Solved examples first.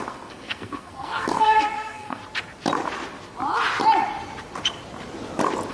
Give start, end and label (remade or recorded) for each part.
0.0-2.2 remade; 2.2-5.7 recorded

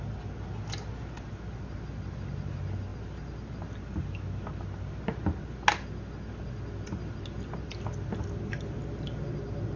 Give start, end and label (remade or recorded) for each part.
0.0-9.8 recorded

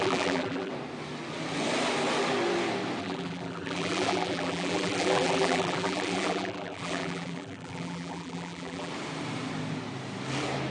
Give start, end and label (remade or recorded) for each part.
0.0-0.7 remade; 0.7-3.0 recorded; 3.0-8.9 remade; 8.9-10.7 recorded